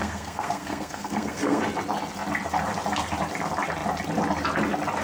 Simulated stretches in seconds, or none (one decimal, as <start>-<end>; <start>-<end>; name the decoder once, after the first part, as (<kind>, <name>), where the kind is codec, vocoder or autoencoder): 0.0-1.6 (codec, SNAC)